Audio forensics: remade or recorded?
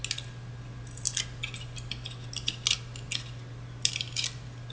recorded